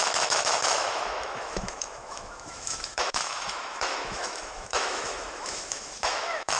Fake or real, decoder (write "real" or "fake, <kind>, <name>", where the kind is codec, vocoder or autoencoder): fake, autoencoder, DAC-VAE